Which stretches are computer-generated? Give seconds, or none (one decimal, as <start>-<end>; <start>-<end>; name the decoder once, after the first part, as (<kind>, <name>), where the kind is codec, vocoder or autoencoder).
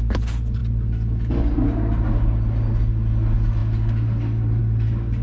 none